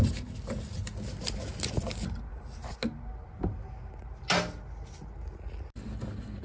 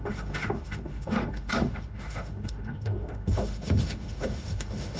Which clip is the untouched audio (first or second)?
first